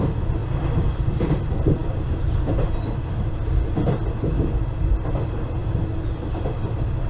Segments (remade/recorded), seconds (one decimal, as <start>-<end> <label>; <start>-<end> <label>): 0.0-0.4 remade; 0.4-1.3 recorded; 1.3-5.6 remade; 5.6-6.3 recorded; 6.3-7.1 remade